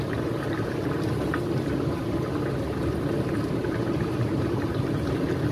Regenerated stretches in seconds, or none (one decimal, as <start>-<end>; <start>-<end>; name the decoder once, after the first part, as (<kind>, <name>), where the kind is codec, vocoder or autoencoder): 0.0-2.0 (vocoder, BigVGAN v2); 3.3-5.5